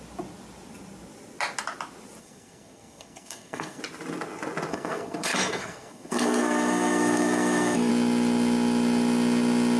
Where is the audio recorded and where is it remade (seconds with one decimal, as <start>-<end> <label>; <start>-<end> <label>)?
0.0-2.2 recorded; 2.2-3.8 remade; 3.8-4.7 recorded; 4.7-7.9 remade; 7.9-9.8 recorded